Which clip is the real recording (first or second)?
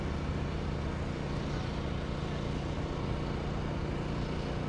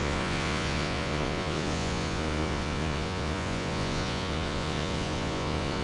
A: first